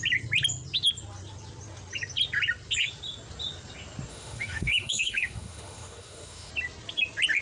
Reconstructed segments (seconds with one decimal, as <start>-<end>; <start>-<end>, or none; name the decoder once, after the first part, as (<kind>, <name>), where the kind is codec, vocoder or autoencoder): 4.1-6.5 (autoencoder, DAC-VAE)